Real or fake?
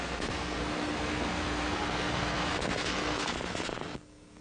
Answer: fake